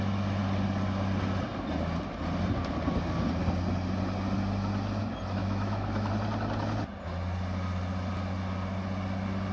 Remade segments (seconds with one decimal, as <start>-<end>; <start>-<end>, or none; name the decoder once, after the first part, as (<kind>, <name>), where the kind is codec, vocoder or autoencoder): 5.4-6.1 (autoencoder, DAC-VAE)